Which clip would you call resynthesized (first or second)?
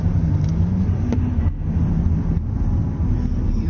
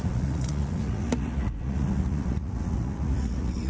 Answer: second